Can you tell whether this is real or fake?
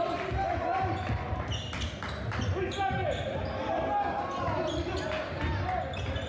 real